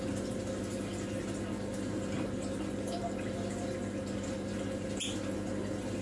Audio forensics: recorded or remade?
recorded